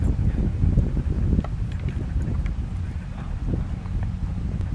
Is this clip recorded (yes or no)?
yes